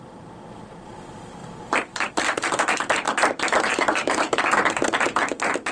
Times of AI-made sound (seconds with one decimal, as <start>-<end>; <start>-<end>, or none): 3.7-4.6